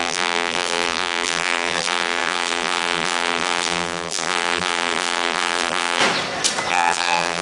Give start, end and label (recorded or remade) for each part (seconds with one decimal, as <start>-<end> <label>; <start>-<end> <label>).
0.0-6.0 remade; 6.0-6.7 recorded; 6.7-7.4 remade